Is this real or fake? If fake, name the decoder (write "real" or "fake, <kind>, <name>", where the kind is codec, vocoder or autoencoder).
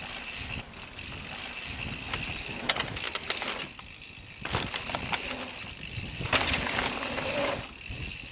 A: real